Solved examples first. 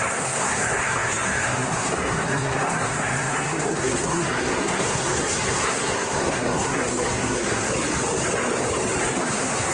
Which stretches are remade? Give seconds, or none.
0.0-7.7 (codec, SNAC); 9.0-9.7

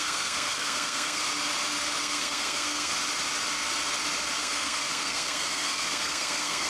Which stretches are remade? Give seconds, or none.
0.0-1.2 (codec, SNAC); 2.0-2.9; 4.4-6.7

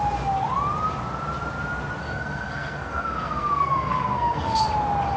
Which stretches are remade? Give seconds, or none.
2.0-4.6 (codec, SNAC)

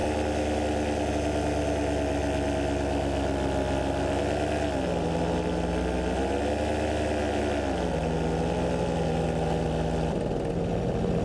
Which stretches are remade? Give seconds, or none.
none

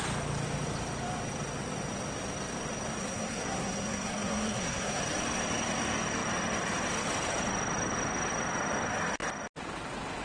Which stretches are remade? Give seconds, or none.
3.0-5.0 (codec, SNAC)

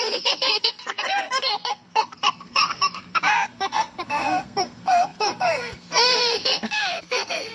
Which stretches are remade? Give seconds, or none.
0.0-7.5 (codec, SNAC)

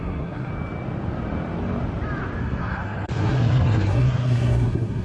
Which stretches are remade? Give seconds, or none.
0.0-0.5 (codec, SNAC); 2.4-5.0

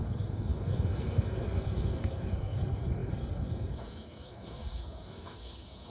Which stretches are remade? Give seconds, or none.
0.0-5.9 (codec, SNAC)